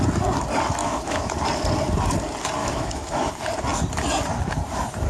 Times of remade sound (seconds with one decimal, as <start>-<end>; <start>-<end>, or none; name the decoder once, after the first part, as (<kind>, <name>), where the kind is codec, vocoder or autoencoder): 0.8-1.3 (autoencoder, DAC-VAE); 2.6-3.3